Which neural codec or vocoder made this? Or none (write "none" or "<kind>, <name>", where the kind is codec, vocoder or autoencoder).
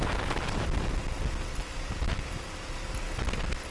none